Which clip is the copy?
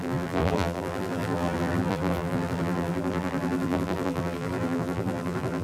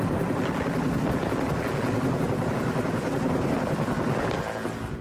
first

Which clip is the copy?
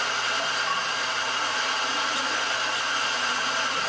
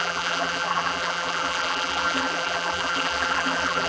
second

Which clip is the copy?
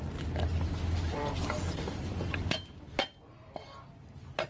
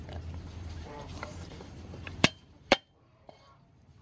second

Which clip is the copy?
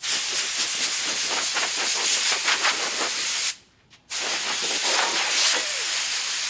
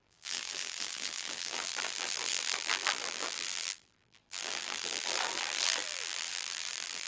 second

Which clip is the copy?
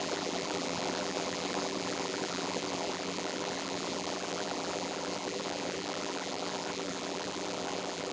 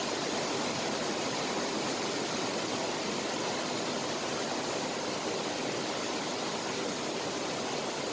first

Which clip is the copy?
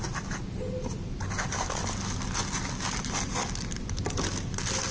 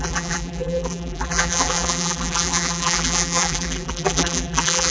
second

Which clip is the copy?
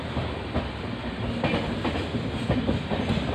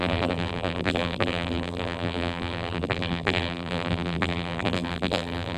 second